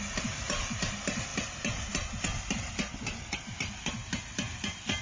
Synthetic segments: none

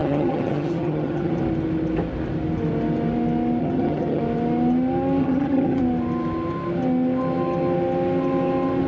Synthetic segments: 0.0-1.3 (vocoder, HiFi-GAN); 3.6-4.2; 5.2-5.8

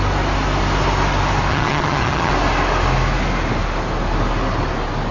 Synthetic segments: 1.5-2.3 (vocoder, HiFi-GAN)

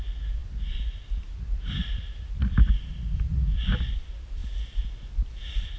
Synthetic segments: none

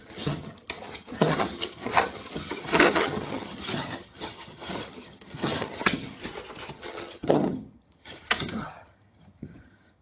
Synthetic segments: 0.0-6.2 (vocoder, HiFi-GAN); 6.7-10.0

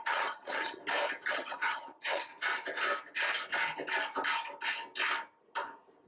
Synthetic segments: 0.0-0.8 (vocoder, HiFi-GAN); 1.3-2.3

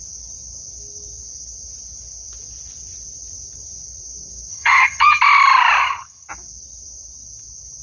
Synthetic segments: 4.5-5.2 (vocoder, HiFi-GAN); 5.8-6.3